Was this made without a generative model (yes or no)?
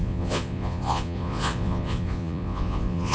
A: no